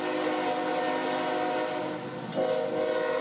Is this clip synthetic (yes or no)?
no